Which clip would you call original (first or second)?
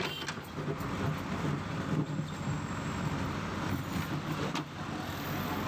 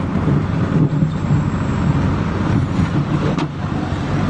first